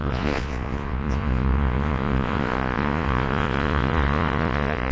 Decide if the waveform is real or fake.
fake